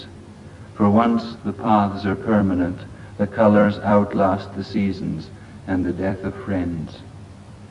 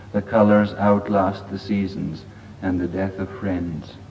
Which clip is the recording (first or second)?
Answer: second